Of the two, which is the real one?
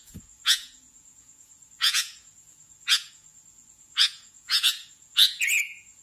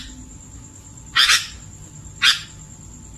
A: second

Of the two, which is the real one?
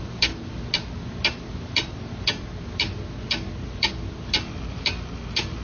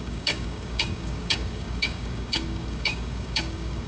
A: first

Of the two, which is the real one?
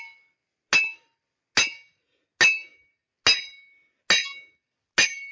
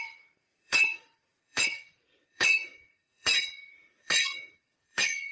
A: first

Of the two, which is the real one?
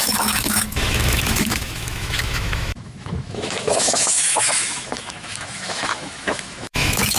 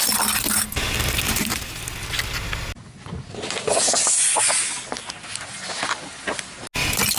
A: second